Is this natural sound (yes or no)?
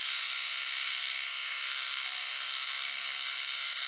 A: no